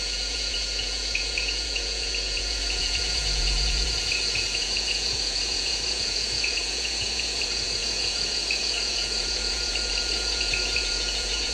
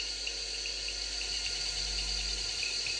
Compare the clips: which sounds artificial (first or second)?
first